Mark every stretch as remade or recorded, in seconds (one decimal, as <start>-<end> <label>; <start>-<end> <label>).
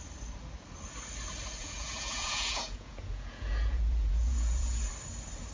0.0-1.6 recorded; 1.6-4.9 remade; 4.9-5.5 recorded